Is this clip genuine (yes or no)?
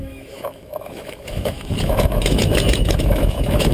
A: no